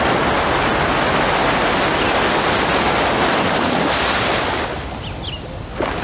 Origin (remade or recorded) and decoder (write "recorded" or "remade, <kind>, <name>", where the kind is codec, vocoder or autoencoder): recorded